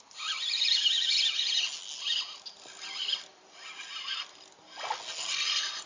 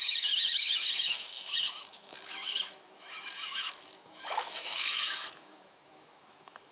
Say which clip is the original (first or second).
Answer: first